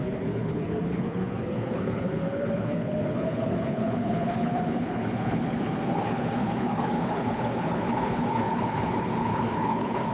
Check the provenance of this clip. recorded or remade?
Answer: remade